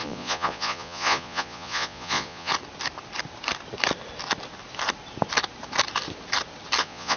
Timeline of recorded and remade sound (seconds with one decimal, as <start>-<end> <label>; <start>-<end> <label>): 0.0-2.5 remade; 2.5-6.8 recorded; 6.8-7.2 remade